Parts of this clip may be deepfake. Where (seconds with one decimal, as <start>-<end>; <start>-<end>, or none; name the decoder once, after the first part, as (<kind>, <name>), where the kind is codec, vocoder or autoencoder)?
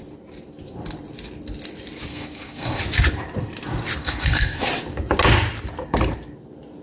2.1-2.8 (codec, SNAC); 4.0-4.7